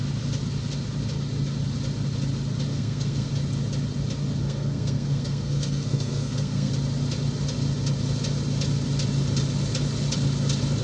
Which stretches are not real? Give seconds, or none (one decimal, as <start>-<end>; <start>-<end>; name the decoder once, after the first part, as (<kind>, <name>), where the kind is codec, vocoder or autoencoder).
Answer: 2.7-3.3 (codec, SNAC); 4.4-6.7